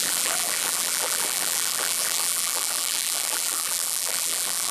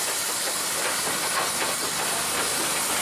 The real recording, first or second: second